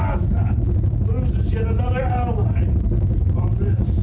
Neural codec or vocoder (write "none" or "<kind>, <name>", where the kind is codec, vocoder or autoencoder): none